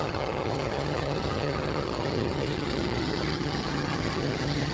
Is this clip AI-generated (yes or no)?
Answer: yes